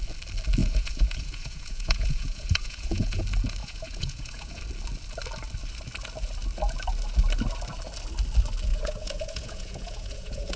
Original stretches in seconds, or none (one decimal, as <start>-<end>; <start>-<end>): 0.0-0.6; 3.2-3.6; 4.6-8.7